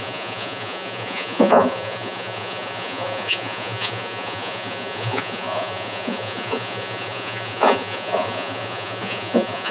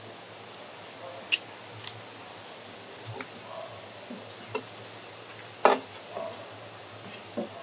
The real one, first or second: second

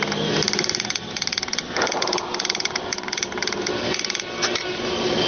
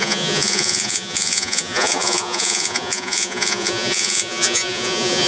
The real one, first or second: first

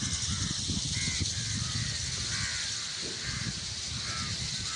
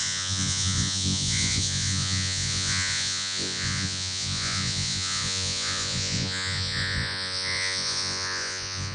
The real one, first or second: first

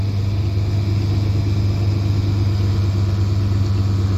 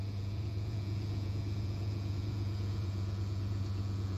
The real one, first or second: first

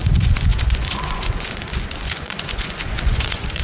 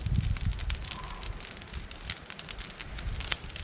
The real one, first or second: second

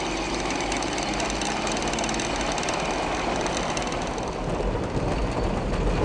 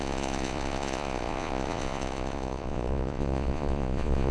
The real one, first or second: first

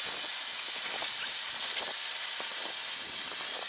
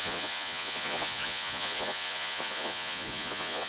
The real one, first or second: first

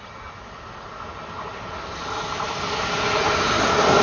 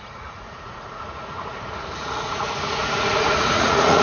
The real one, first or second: first